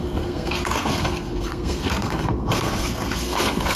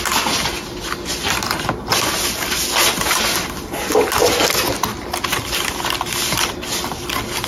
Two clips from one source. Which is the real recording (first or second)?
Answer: second